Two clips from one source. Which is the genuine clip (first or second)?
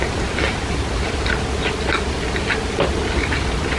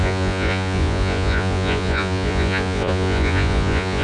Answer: first